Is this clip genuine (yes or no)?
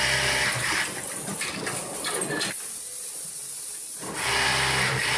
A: yes